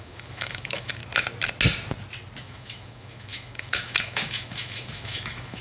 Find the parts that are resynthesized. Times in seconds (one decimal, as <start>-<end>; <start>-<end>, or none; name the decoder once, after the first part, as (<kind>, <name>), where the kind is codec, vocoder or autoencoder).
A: 0.0-1.0 (autoencoder, DAC-VAE); 2.4-5.6